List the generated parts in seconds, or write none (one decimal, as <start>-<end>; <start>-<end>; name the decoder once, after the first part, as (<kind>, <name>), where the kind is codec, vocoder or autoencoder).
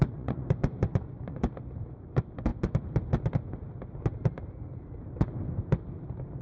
0.0-1.4 (vocoder, Vocos)